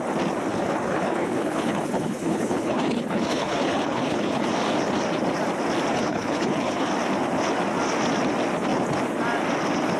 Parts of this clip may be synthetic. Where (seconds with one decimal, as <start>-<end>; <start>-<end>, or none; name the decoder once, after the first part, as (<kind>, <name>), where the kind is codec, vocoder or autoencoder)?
0.5-4.5 (codec, HILCodec); 5.9-6.9

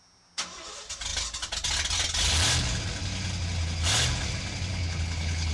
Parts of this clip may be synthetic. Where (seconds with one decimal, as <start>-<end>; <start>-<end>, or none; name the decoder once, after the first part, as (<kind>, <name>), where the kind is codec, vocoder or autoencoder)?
4.7-5.5 (codec, HILCodec)